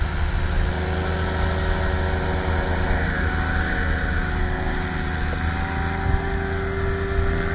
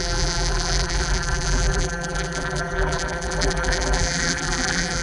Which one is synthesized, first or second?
second